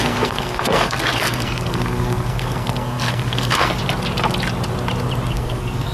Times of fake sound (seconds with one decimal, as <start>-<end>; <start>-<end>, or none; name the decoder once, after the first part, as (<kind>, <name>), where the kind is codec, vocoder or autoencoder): 0.0-3.8 (codec, SNAC); 5.3-5.9